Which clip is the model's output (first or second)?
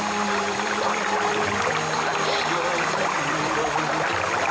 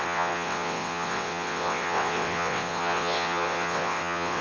second